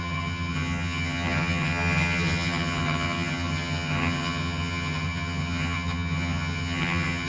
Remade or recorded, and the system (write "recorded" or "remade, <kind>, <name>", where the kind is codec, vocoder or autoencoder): remade, vocoder, HiFi-GAN